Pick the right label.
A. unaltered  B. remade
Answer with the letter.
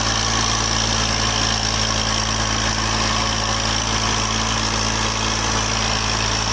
A